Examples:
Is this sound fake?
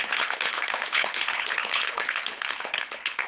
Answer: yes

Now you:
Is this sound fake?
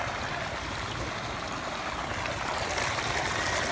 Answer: no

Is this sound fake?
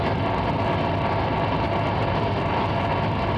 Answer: no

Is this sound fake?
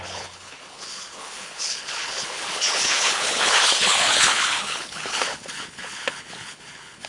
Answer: yes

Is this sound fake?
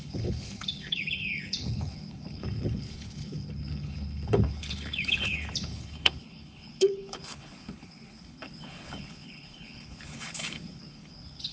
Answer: yes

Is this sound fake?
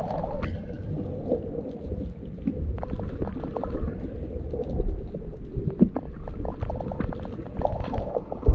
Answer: no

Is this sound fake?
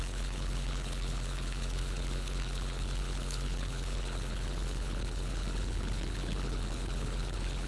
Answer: yes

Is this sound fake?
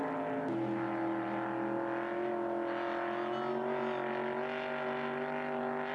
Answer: no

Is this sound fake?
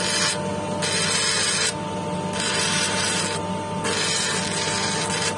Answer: no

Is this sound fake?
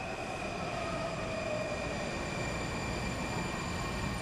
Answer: no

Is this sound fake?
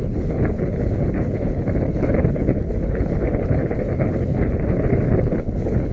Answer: yes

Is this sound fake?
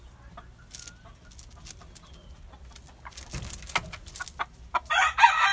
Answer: no